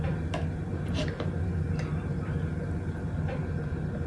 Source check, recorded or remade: recorded